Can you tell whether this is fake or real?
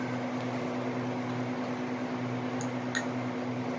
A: real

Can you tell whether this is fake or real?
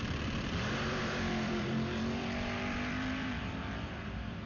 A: fake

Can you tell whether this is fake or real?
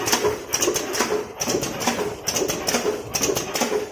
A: real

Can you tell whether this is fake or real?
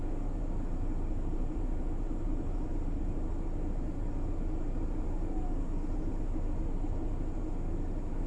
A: fake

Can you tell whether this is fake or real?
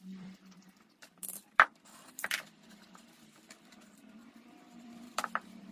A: fake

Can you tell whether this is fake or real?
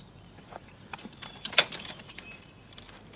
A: fake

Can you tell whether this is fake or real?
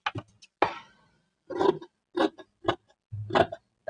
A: real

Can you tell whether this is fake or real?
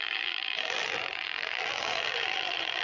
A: fake